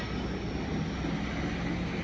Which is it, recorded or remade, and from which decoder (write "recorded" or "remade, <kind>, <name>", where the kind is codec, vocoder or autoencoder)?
recorded